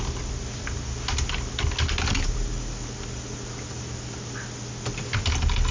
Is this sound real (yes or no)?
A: yes